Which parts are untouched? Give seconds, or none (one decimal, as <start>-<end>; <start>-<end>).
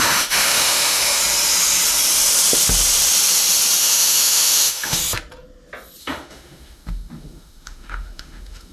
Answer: 1.2-3.8; 5.0-6.0